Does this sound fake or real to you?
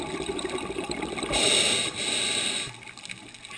real